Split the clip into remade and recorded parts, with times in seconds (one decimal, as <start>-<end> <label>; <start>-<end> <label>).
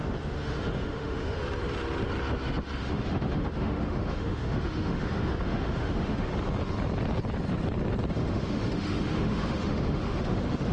0.0-1.4 remade; 1.4-2.8 recorded; 2.8-6.3 remade; 6.3-8.1 recorded; 8.1-10.7 remade